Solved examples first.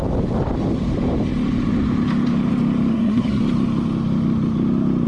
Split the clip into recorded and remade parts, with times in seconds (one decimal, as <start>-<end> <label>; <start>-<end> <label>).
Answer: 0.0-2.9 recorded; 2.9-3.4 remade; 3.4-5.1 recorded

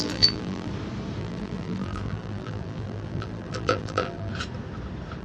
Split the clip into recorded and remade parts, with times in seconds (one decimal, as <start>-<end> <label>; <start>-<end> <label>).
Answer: 0.0-0.7 remade; 0.7-1.2 recorded; 1.2-4.3 remade; 4.3-5.2 recorded

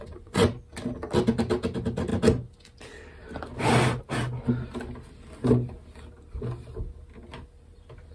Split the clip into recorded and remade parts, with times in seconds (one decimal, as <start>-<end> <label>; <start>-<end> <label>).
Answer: 0.0-0.5 remade; 0.5-8.1 recorded

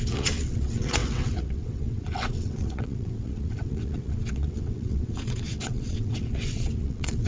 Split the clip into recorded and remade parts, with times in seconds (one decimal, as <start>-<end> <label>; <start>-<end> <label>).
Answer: 0.0-7.3 remade

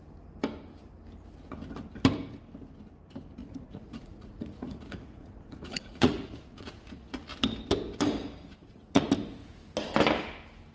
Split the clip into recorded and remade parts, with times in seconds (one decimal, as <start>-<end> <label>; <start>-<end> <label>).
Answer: 0.0-3.4 recorded; 3.4-7.2 remade; 7.2-8.6 recorded; 8.6-9.1 remade; 9.1-10.7 recorded

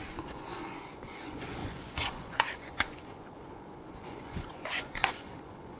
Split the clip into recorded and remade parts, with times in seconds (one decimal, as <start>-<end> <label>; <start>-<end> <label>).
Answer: 0.0-5.8 remade

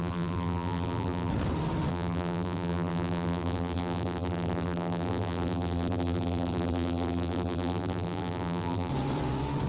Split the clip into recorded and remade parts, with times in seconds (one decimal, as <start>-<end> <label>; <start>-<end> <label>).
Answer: 0.0-1.3 remade; 1.3-1.9 recorded; 1.9-8.9 remade; 8.9-9.7 recorded

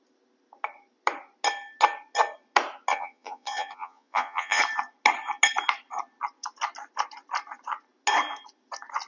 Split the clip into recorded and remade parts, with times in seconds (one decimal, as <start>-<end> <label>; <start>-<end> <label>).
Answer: 0.0-2.9 recorded; 2.9-4.6 remade; 4.6-9.1 recorded